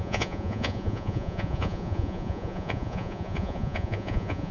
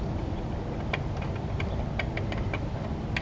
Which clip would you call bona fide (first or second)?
second